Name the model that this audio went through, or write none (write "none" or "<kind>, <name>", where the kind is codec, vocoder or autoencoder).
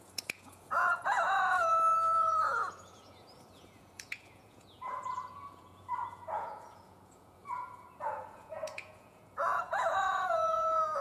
vocoder, Vocos